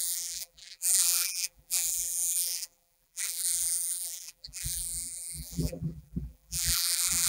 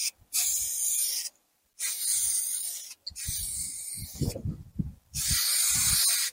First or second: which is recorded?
second